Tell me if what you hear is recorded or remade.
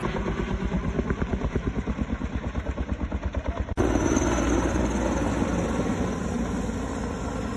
recorded